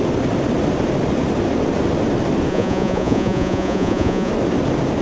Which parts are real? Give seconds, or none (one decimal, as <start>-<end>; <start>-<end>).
0.0-2.5; 4.3-5.0